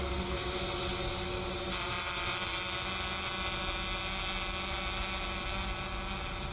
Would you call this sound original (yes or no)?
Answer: yes